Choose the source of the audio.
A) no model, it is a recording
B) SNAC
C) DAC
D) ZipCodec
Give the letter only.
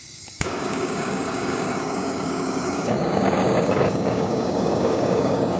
C